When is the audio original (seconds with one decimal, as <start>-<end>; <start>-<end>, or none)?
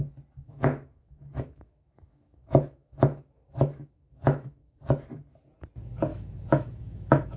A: 0.0-0.4; 4.8-6.1